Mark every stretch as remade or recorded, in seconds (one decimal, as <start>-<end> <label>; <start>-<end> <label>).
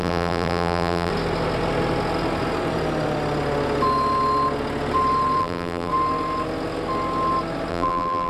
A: 0.0-1.1 remade; 1.1-5.4 recorded; 5.4-5.9 remade; 5.9-7.7 recorded; 7.7-8.3 remade